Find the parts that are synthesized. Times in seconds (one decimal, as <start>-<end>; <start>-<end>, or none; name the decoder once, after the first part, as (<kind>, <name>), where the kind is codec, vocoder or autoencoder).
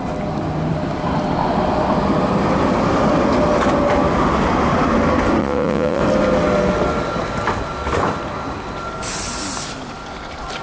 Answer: 5.4-6.0 (vocoder, Vocos)